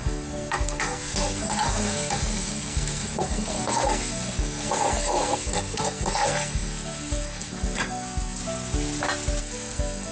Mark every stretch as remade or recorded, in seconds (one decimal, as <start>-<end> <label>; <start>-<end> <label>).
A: 0.0-8.4 remade; 8.4-9.4 recorded; 9.4-10.1 remade